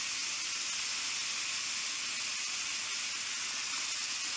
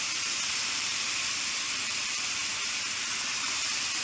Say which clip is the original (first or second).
first